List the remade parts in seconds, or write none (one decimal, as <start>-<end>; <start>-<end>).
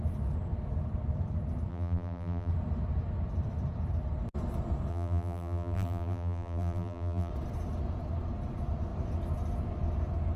1.7-2.5; 4.9-7.3